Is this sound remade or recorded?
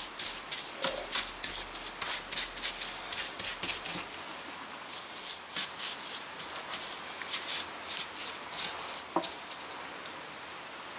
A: recorded